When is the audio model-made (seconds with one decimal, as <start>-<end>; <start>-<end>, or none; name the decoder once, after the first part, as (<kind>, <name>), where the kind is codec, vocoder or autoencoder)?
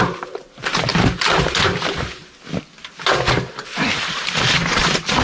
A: 0.0-2.2 (vocoder, BigVGAN v2); 3.4-5.2